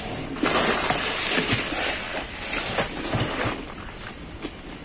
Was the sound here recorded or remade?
recorded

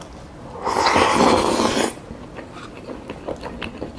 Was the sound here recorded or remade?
recorded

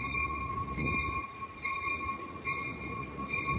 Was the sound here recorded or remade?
remade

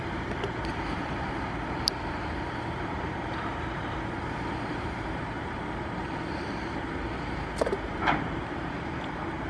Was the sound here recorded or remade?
remade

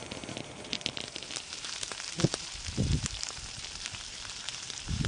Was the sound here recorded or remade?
remade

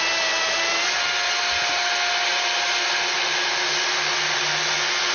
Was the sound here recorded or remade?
recorded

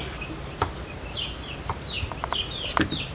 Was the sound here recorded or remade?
recorded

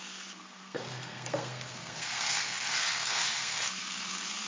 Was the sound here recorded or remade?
remade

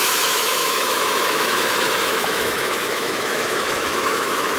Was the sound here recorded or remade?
remade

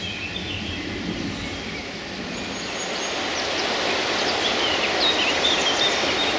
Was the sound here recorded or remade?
recorded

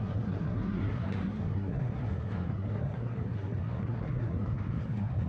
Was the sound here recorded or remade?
remade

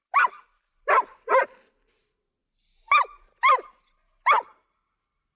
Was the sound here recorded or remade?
recorded